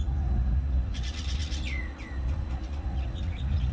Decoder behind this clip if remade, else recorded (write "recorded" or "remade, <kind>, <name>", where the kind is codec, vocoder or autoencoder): remade, vocoder, Vocos